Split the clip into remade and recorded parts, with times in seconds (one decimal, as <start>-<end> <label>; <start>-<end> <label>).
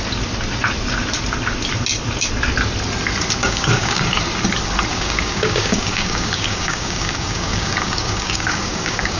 0.0-3.4 recorded; 3.4-4.0 remade; 4.0-4.9 recorded; 4.9-9.2 remade